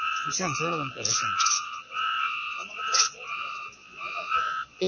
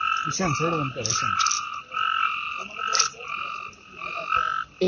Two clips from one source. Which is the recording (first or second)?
second